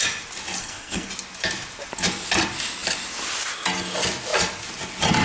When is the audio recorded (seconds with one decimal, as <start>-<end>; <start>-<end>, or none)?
0.0-0.6; 1.1-5.2